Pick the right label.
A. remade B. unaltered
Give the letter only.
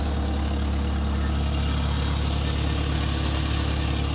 B